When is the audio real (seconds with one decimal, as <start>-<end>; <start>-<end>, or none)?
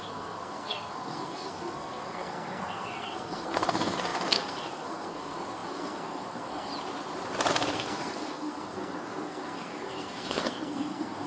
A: 6.7-7.5